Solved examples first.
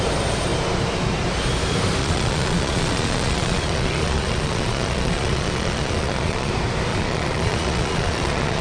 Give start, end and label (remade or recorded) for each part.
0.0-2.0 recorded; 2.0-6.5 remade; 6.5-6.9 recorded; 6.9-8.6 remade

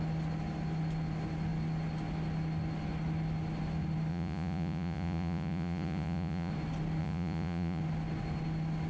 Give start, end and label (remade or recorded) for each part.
0.0-4.1 recorded; 4.1-6.5 remade; 6.5-7.0 recorded; 7.0-7.8 remade; 7.8-8.9 recorded

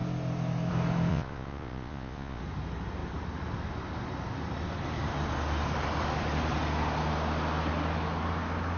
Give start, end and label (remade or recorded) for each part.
0.0-1.1 recorded; 1.1-2.4 remade; 2.4-8.8 recorded